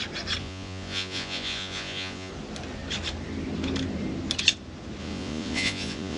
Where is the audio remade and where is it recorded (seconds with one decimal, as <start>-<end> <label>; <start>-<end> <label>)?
0.0-0.4 recorded; 0.4-2.3 remade; 2.3-5.0 recorded; 5.0-6.2 remade